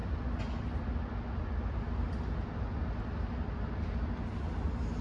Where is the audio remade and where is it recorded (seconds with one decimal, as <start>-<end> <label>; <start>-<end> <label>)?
0.0-5.0 recorded